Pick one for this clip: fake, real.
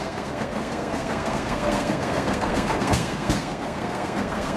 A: fake